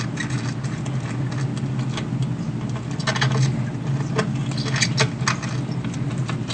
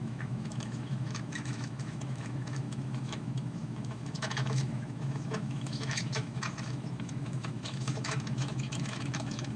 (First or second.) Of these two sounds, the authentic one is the first